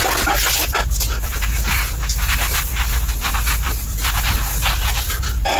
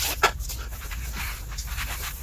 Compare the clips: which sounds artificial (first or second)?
second